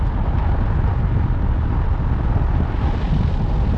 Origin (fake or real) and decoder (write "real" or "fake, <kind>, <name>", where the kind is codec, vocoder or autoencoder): real